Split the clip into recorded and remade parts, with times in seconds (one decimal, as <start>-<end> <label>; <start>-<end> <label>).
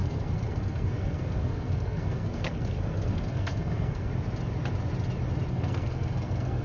0.0-4.1 remade; 4.1-5.5 recorded; 5.5-6.6 remade